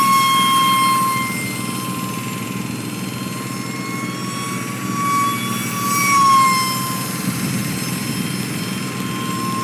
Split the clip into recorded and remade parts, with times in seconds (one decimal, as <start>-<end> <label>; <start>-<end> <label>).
0.0-9.6 recorded